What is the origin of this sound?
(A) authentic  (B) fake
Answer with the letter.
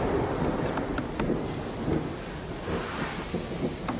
A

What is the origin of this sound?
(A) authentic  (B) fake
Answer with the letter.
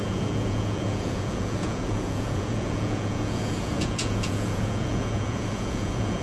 B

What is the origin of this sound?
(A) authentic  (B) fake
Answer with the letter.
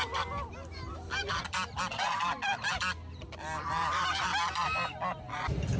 B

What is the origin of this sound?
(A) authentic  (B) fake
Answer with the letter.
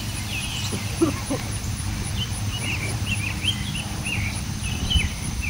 B